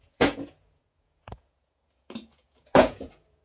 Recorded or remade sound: remade